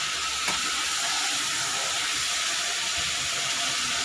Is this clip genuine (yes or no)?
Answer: yes